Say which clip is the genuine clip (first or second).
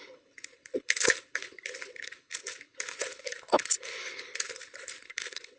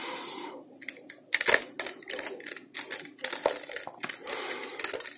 second